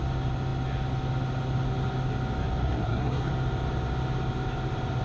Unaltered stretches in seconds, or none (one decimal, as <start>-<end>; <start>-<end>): 0.0-2.6; 3.3-5.0